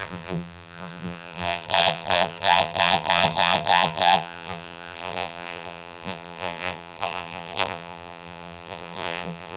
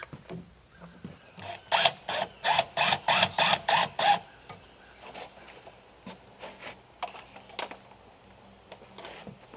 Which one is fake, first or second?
first